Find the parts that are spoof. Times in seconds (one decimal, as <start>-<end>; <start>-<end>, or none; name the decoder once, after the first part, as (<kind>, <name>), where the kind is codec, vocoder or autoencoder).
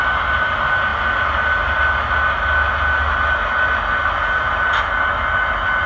none